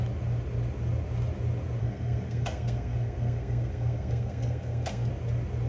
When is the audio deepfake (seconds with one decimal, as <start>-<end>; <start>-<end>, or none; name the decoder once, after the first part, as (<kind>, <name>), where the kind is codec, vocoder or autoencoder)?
1.8-5.1 (codec, SNAC)